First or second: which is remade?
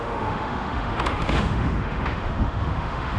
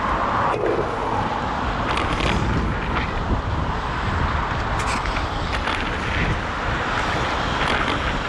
first